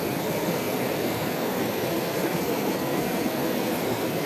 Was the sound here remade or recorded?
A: remade